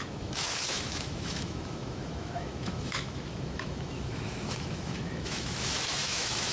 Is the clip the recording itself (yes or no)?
no